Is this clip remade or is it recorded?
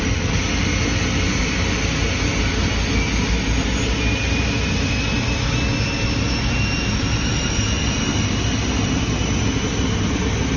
recorded